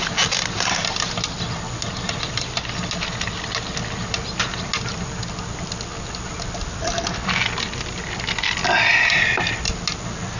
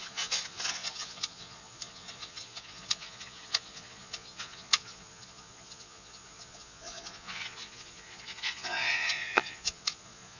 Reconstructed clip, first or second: second